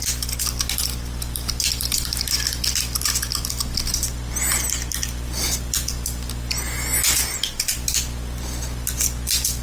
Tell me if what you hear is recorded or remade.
recorded